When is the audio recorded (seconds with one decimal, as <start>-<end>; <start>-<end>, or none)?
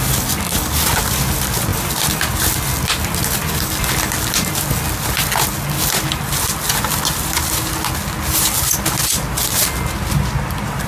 0.0-10.9